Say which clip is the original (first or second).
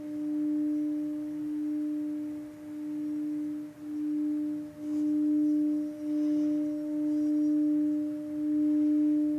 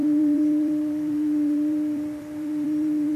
first